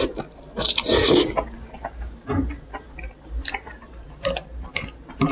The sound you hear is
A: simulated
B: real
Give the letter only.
A